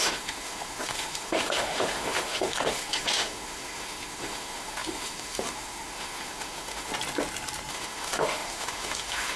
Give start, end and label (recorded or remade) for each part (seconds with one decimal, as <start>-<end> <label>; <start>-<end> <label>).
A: 0.0-6.9 remade; 6.9-7.7 recorded; 7.7-9.4 remade